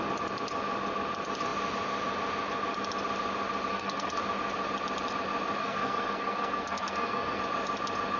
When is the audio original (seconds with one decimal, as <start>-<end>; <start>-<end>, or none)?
0.0-3.7; 4.2-5.6; 7.4-8.2